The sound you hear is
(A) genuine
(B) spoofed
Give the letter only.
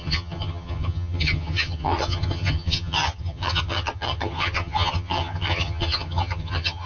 B